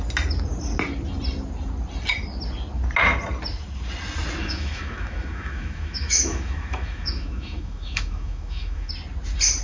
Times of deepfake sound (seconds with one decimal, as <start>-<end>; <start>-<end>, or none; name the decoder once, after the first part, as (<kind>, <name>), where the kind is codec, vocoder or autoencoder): 4.4-8.9 (autoencoder, DAC-VAE)